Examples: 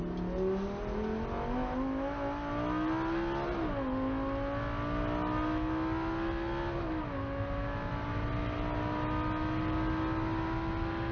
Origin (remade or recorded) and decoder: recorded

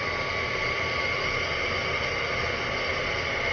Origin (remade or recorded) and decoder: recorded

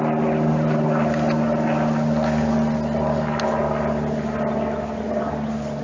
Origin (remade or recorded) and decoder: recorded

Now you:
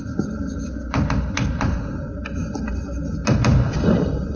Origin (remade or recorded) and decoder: remade, vocoder, BigVGAN v2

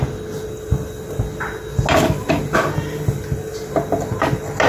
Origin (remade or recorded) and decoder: recorded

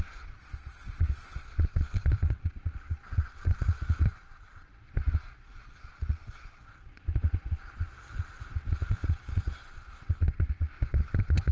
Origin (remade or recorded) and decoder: remade, vocoder, Vocos